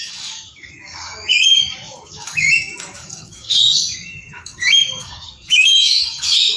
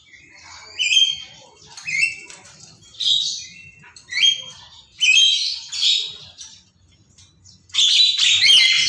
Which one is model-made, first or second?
first